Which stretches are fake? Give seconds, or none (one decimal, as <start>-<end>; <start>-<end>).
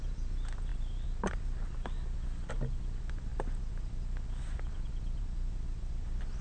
0.7-2.7; 3.3-6.4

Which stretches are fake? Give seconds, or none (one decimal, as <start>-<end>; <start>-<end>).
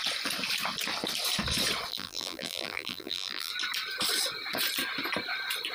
1.9-3.5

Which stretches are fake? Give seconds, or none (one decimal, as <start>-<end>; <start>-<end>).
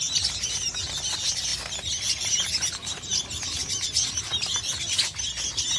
none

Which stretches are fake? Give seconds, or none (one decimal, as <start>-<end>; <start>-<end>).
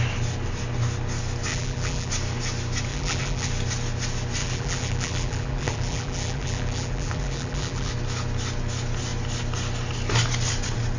1.5-2.1; 2.9-3.5; 4.4-7.9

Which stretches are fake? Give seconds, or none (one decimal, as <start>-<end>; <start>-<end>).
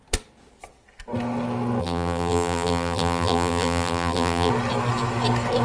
1.8-4.5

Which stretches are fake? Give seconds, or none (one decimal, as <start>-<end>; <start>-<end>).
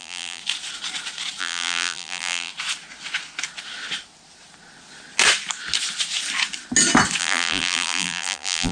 0.0-0.4; 1.4-2.5; 7.2-8.7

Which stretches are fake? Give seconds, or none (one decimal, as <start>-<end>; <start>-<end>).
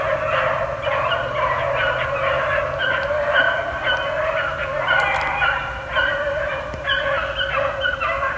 4.6-7.0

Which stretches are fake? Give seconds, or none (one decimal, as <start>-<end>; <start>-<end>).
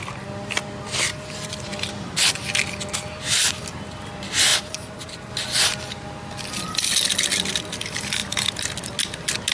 4.5-5.3